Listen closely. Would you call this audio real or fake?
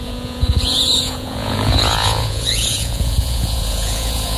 fake